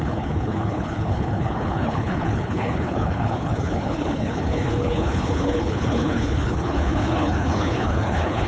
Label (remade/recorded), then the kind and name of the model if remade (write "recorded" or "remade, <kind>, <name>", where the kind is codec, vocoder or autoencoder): remade, codec, HILCodec